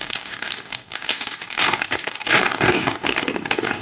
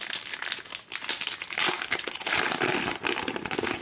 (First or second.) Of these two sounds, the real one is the second